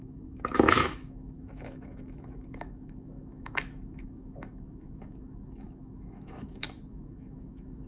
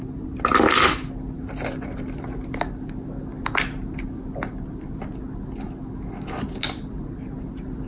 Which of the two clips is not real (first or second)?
first